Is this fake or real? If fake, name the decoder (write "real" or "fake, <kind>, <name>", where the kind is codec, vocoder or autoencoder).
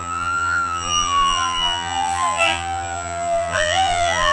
fake, vocoder, BigVGAN v2